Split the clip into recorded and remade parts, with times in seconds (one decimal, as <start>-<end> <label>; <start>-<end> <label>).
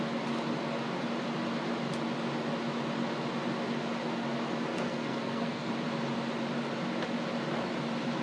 0.0-4.7 recorded; 4.7-5.7 remade; 5.7-8.2 recorded